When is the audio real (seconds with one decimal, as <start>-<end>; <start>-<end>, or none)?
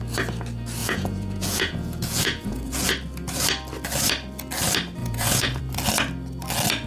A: 0.0-0.8; 2.9-5.0; 5.6-6.9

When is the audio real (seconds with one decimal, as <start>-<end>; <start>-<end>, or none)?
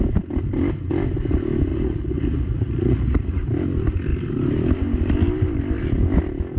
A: 0.0-1.7; 3.4-6.6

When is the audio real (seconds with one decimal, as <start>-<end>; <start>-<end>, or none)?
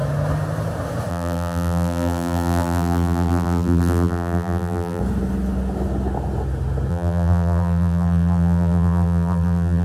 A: 0.0-1.1; 5.0-6.9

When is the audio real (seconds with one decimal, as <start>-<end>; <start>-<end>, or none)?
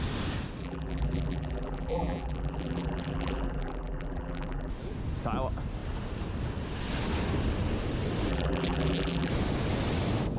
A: 0.0-0.6; 4.7-8.3; 9.3-10.4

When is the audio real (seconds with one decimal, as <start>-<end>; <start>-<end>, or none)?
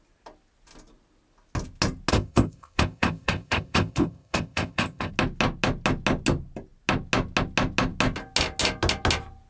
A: 0.0-2.1; 5.1-9.5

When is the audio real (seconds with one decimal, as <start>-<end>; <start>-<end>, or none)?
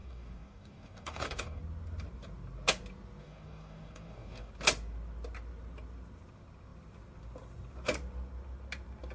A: 1.6-3.2; 4.5-9.1